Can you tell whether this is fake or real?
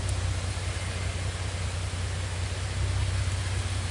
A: real